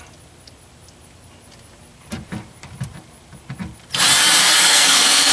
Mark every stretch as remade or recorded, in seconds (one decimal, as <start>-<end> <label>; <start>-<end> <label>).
0.0-4.4 recorded; 4.4-5.3 remade